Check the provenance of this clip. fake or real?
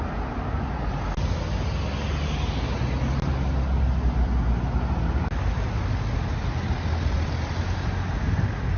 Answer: real